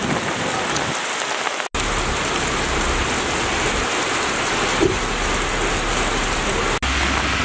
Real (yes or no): yes